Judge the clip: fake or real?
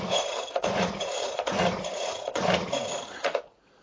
fake